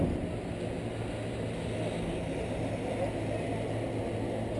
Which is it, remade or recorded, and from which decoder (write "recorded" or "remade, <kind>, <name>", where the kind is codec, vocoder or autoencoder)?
recorded